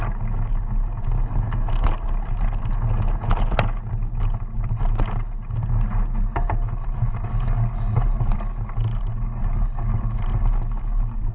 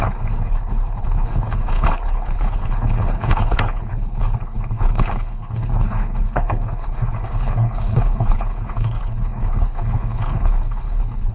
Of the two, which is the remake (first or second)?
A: second